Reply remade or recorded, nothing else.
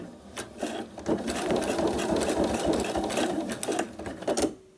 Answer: recorded